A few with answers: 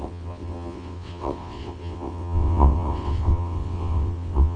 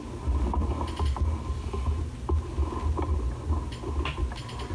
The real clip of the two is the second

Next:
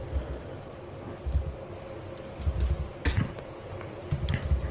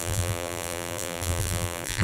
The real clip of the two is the first